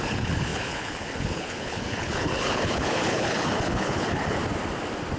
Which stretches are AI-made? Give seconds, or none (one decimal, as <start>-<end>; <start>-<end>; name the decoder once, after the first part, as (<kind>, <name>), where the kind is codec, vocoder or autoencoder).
0.0-4.4 (codec, HILCodec)